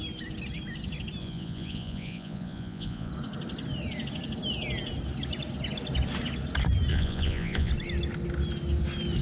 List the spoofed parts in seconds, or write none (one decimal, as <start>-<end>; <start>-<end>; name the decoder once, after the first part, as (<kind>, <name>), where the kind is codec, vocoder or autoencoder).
1.2-3.1 (vocoder, Vocos); 6.9-7.7